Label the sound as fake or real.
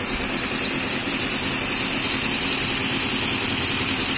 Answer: real